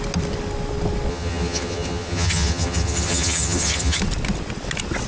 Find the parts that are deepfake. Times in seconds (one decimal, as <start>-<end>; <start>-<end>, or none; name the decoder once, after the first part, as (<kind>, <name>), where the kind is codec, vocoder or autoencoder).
1.1-4.0 (vocoder, HiFi-GAN)